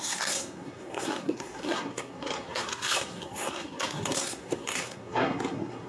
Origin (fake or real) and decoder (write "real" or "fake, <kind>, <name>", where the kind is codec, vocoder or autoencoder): fake, codec, SNAC